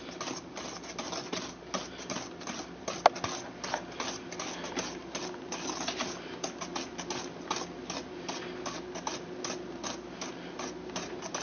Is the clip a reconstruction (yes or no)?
no